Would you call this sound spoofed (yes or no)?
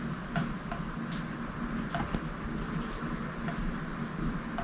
no